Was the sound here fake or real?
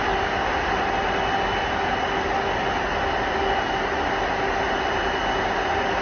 real